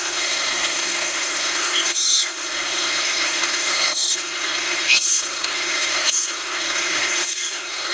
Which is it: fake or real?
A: fake